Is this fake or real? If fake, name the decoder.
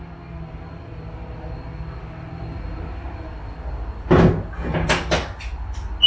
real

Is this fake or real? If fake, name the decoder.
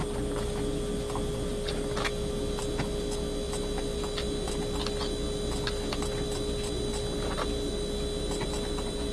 real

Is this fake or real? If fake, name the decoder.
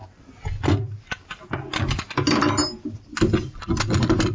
real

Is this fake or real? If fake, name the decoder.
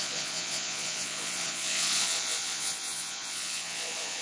fake, vocoder, Vocos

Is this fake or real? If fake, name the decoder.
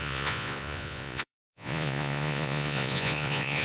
fake, vocoder, Vocos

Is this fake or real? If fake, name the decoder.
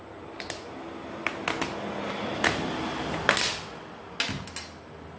real